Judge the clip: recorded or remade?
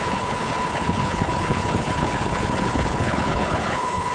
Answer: remade